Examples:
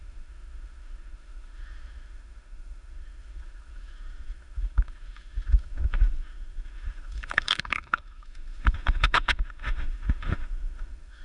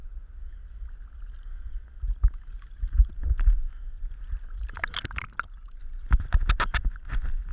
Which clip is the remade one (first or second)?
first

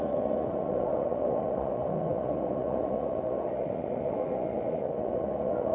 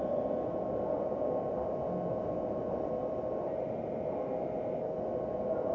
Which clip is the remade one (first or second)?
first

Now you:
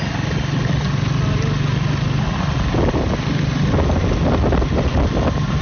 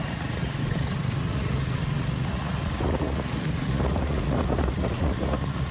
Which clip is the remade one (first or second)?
second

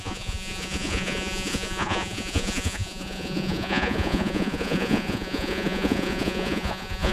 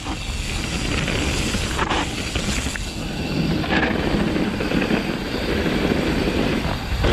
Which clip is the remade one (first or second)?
first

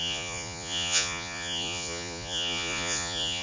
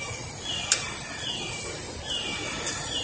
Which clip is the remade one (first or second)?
first